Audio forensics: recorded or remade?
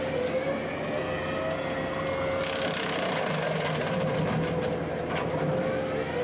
recorded